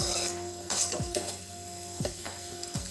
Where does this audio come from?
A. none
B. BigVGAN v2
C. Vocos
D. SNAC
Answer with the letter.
D